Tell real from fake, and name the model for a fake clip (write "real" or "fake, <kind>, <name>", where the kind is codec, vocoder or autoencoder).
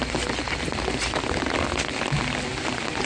real